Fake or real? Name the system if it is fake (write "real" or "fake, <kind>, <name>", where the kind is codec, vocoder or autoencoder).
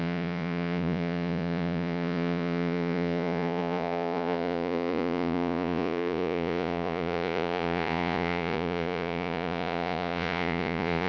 fake, vocoder, Vocos